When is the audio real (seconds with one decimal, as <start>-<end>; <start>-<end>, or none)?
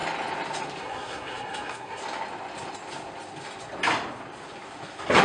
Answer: 0.0-0.8; 2.0-5.2